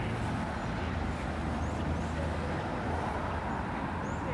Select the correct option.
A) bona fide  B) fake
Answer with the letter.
A